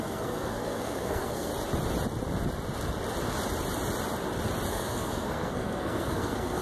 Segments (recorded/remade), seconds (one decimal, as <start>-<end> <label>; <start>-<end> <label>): 0.0-1.5 remade; 1.5-4.7 recorded; 4.7-6.6 remade